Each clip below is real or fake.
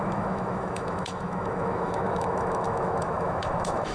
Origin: fake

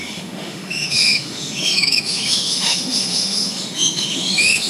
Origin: fake